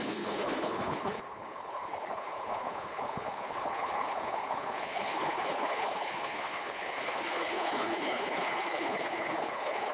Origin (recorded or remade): remade